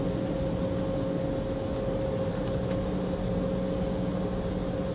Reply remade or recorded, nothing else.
recorded